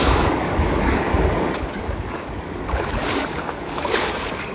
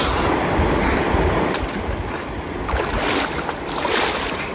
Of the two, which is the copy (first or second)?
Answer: first